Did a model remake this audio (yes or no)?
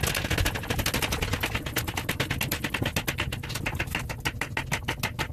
no